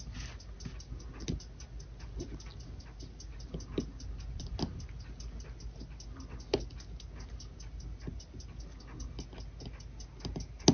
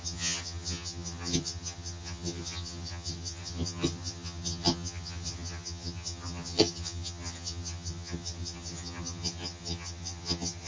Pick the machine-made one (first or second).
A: second